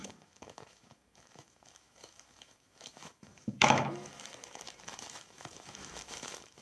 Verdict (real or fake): fake